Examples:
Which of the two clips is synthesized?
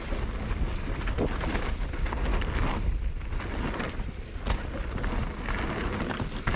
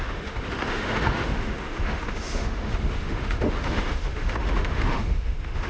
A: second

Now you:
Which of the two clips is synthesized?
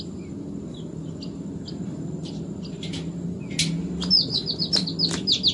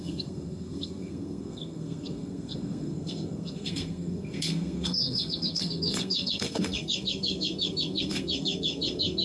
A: second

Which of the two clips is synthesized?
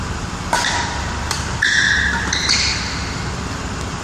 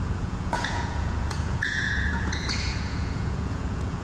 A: second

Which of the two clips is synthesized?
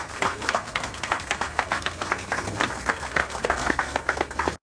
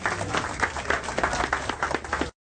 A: first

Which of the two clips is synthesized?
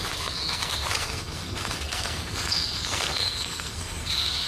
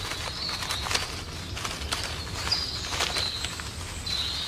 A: first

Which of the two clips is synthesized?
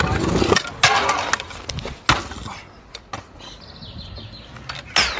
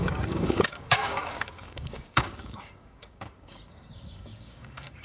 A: second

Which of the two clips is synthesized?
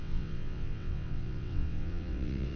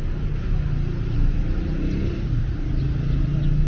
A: first